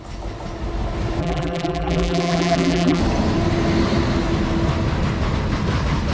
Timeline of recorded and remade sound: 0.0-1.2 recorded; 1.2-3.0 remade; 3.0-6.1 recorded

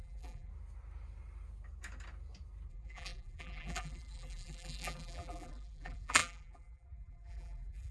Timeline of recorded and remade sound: 0.0-0.5 remade; 0.5-2.7 recorded; 2.7-7.9 remade

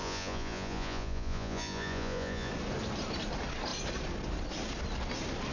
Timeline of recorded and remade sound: 0.0-2.5 remade; 2.5-5.5 recorded

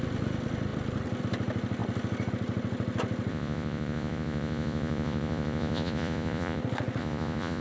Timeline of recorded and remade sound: 0.0-3.3 recorded; 3.3-6.6 remade; 6.6-7.0 recorded; 7.0-7.6 remade

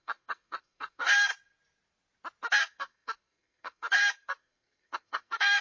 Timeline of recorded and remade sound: 0.0-1.3 remade; 1.3-2.6 recorded; 2.6-5.6 remade

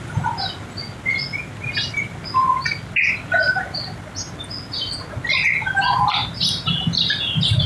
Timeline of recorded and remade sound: 0.0-7.7 recorded